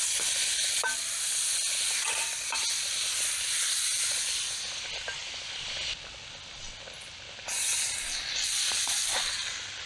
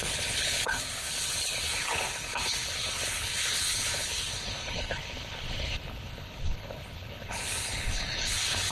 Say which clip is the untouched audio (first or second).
first